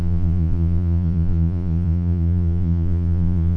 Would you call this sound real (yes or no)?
no